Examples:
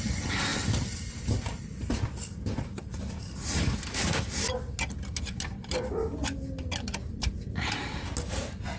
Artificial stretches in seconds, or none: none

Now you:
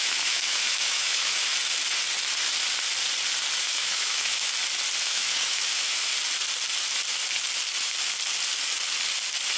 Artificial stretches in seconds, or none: 0.0-1.5 (autoencoder, DAC-VAE); 3.6-4.5; 5.0-6.1